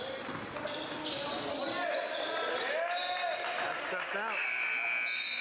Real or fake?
real